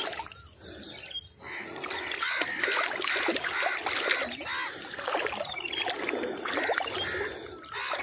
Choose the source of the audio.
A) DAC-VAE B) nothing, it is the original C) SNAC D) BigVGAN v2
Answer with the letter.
B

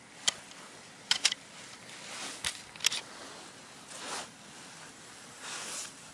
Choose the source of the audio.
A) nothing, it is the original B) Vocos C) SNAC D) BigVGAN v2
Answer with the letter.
A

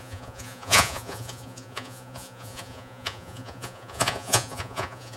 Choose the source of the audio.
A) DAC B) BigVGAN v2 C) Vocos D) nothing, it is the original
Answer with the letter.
C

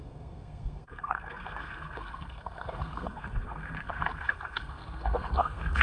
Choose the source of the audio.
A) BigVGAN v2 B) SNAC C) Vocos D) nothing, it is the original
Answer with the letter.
B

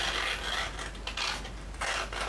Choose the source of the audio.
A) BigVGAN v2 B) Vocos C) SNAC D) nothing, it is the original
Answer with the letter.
D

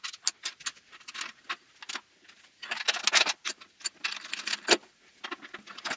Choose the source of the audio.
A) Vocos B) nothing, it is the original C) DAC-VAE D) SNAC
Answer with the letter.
B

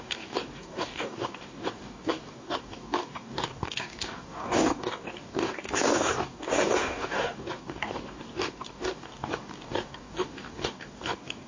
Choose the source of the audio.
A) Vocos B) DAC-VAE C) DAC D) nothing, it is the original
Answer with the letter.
C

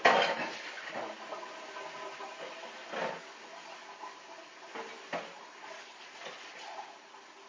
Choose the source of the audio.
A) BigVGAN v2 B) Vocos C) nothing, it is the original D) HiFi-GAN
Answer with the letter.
C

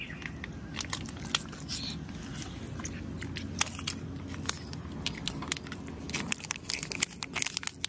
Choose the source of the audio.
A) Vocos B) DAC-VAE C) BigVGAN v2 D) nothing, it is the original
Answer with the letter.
D